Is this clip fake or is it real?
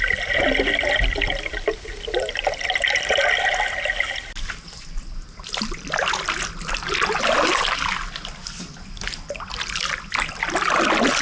real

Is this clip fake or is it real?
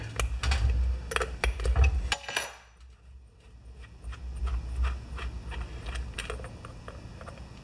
real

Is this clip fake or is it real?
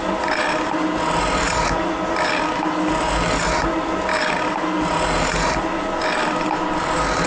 real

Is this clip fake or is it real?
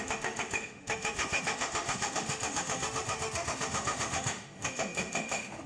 fake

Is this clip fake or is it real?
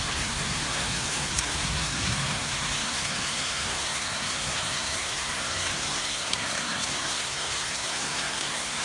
fake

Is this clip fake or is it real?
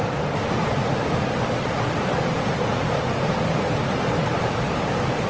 fake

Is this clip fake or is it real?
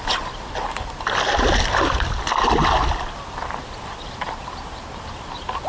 real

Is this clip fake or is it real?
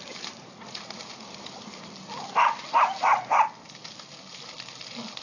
real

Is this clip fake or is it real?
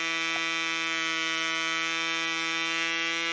real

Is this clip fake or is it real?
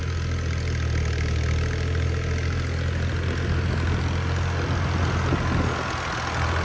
real